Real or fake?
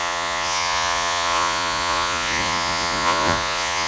fake